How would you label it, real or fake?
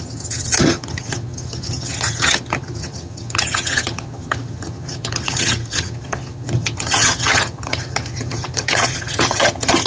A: fake